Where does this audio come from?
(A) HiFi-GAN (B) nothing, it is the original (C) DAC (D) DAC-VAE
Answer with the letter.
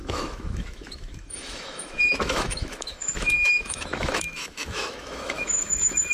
D